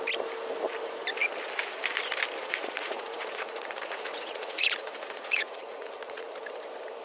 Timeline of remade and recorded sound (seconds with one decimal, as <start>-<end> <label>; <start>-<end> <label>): 0.0-2.4 recorded; 2.4-6.3 remade; 6.3-7.0 recorded